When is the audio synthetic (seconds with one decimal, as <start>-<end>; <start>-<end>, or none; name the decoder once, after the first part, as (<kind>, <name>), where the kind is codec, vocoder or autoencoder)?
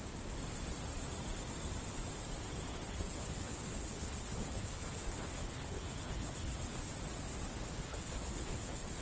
2.7-6.9 (codec, HILCodec); 7.9-9.0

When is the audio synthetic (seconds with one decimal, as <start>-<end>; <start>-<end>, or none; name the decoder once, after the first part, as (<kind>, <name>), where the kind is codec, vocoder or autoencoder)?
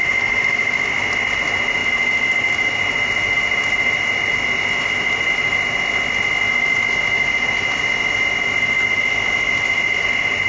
none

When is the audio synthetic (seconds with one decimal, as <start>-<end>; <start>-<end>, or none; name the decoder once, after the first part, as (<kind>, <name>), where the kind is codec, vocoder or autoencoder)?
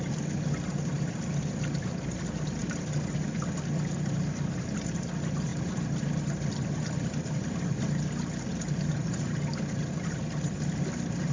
none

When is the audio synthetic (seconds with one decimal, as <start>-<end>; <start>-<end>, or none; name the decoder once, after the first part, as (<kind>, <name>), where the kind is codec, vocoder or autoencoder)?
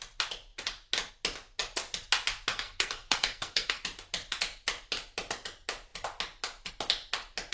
2.5-3.8 (codec, SNAC)